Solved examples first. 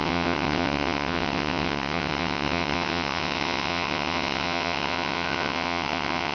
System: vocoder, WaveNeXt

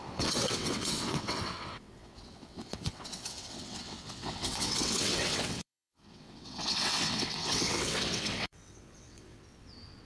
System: vocoder, WaveNeXt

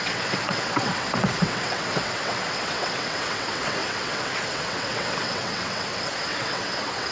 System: vocoder, WaveNeXt